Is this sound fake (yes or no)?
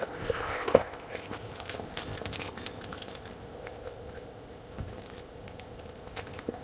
yes